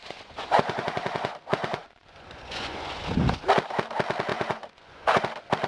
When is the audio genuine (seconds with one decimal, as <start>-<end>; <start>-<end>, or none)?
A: 3.4-4.3; 5.2-5.7